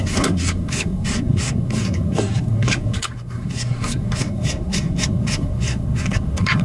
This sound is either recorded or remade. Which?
remade